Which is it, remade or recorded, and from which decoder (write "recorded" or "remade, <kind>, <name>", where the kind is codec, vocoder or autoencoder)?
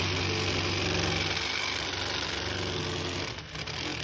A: recorded